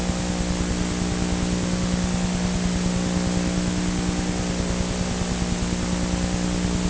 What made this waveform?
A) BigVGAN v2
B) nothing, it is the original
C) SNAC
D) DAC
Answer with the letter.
B